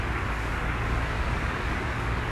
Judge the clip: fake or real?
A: fake